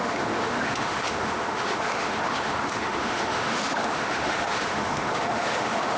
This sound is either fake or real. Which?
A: fake